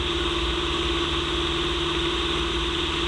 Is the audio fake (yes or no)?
no